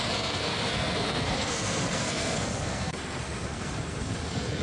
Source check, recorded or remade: remade